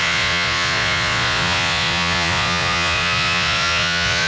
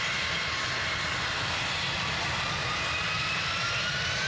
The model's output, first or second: first